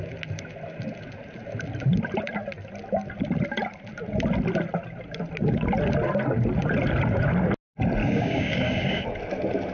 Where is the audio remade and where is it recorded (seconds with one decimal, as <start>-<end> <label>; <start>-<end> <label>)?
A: 0.0-8.0 recorded; 8.0-9.0 remade; 9.0-9.7 recorded